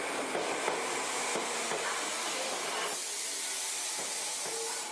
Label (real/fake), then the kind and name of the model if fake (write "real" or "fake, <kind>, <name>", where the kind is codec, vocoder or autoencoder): real